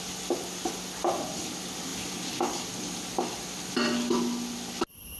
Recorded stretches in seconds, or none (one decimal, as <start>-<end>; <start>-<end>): 0.0-5.2